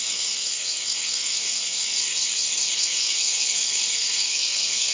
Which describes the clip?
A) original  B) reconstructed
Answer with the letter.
B